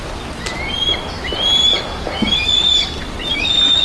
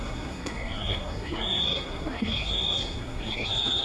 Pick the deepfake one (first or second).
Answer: second